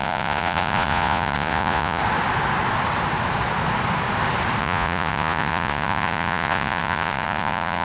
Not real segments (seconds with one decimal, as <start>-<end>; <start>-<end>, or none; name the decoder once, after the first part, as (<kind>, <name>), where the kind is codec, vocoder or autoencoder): 0.0-2.0 (vocoder, Vocos); 4.6-7.8